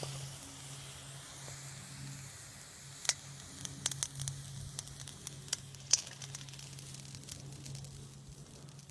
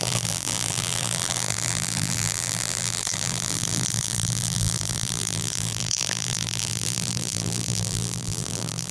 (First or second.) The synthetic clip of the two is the second